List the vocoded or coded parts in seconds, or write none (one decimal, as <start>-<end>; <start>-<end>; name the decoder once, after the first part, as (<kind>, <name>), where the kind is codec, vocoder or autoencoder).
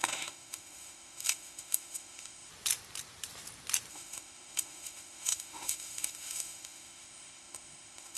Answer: 0.0-2.5 (autoencoder, DAC-VAE); 3.9-8.2